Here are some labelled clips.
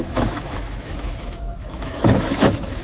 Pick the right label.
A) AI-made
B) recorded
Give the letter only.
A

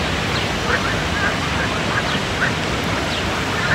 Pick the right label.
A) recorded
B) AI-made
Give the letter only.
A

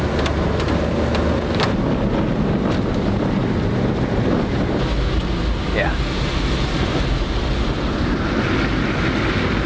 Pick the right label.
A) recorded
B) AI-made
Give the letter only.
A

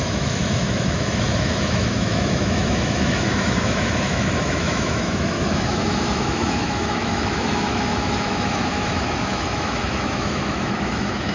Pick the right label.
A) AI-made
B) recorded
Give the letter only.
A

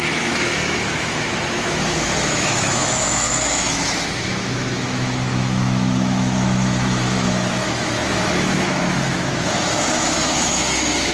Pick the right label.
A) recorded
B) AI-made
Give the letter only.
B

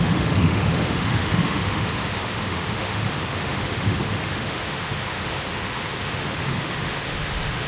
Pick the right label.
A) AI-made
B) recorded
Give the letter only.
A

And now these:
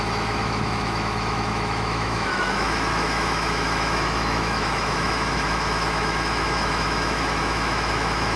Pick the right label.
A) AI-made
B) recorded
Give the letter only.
A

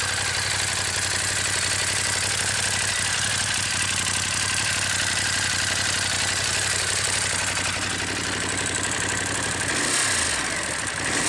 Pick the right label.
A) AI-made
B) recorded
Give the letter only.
B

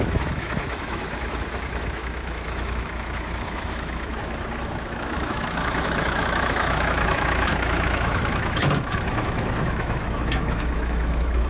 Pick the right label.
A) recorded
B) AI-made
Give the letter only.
B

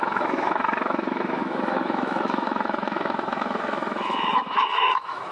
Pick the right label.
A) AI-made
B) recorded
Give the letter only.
A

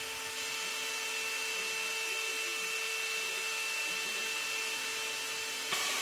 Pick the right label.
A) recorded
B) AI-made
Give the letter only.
A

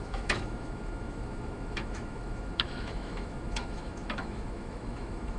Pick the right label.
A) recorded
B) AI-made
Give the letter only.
B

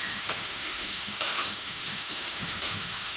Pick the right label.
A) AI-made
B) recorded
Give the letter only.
A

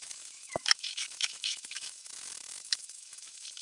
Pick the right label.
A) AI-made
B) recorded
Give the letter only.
A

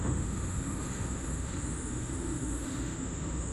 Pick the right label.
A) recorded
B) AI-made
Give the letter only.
B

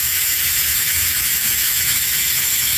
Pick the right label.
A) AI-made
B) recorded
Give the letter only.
A